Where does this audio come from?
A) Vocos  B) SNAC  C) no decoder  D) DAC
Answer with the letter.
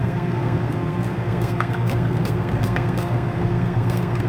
B